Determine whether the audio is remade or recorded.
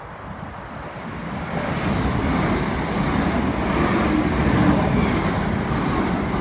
recorded